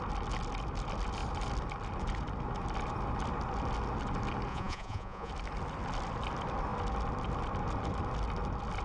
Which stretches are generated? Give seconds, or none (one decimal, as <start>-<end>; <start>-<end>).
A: 4.5-5.3